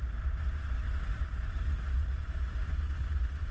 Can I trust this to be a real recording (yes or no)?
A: yes